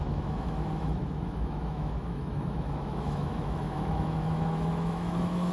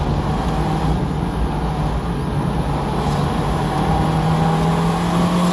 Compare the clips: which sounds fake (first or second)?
first